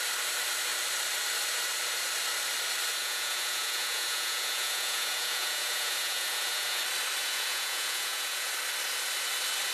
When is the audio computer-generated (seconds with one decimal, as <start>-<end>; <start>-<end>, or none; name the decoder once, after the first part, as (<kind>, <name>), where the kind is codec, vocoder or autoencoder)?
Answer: 3.0-6.8 (vocoder, Vocos); 7.2-8.5